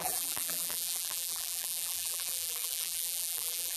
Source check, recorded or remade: remade